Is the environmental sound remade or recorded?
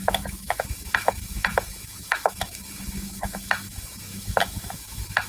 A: remade